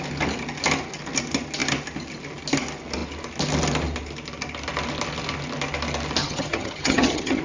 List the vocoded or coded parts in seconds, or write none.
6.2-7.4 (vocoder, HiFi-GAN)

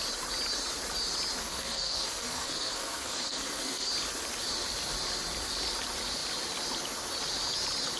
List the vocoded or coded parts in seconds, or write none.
1.4-3.9 (codec, SNAC)

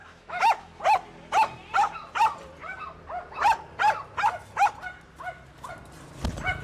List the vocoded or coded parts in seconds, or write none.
0.0-0.8 (autoencoder, DAC-VAE)

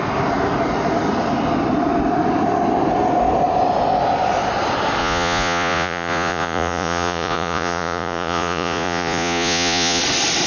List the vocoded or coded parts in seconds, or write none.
5.0-10.0 (vocoder, Vocos)

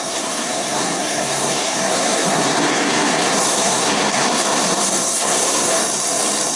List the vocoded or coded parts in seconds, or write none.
0.0-5.8 (codec, SNAC)

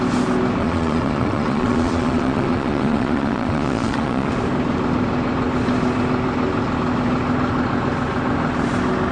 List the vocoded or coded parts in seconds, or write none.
0.6-4.3 (vocoder, Vocos)